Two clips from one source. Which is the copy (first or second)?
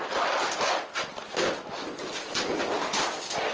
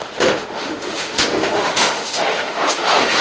second